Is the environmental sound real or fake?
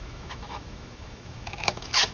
fake